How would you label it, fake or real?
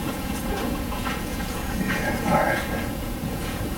fake